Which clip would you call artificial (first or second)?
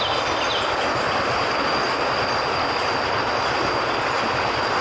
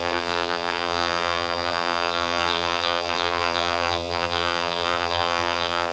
second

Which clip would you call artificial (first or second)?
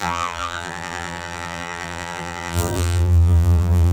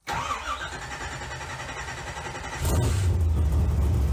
first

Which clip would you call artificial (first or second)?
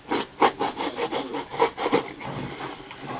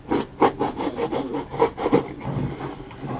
first